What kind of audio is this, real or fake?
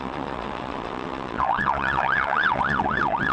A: fake